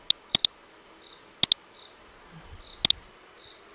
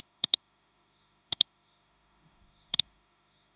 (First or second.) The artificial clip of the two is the second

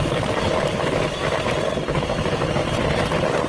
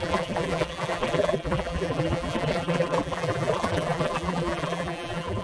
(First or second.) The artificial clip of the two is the second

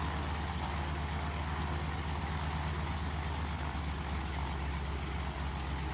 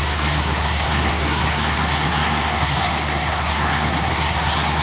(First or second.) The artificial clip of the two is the second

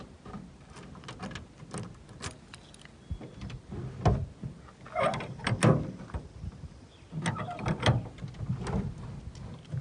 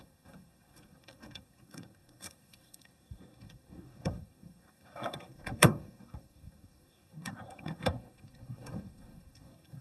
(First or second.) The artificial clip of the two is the second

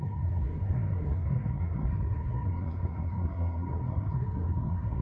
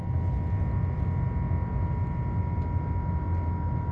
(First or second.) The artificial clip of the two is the first